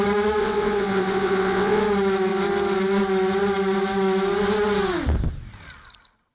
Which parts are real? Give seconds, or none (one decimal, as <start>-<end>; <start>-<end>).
0.0-0.4; 1.8-6.3